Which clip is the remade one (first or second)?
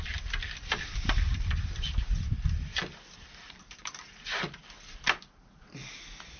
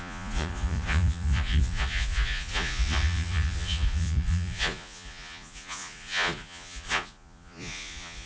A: second